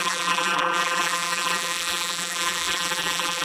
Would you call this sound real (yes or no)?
no